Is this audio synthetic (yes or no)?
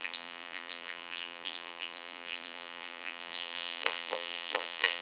yes